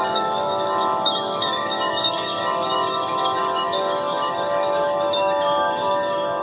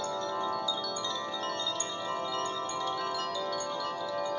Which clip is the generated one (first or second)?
first